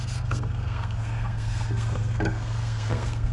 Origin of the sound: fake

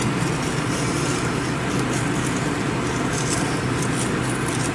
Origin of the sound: real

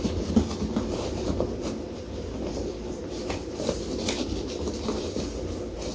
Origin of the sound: fake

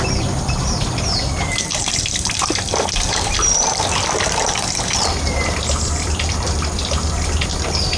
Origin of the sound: fake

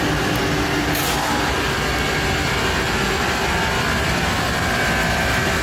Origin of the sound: real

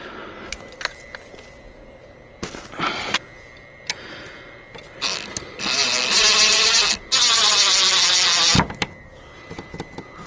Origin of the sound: real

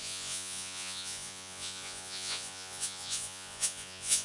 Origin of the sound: fake